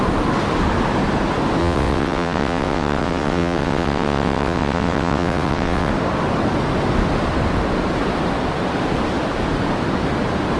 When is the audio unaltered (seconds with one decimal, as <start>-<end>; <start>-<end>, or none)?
0.0-1.6; 5.9-10.6